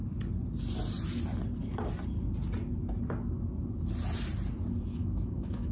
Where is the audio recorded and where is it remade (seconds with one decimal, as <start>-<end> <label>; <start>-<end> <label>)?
0.0-4.9 recorded; 4.9-5.7 remade